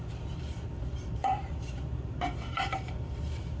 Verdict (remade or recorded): remade